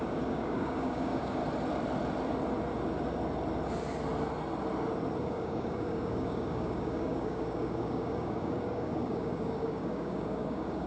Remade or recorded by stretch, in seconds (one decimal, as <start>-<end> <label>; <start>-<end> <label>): 0.0-1.4 remade; 1.4-5.2 recorded; 5.2-10.9 remade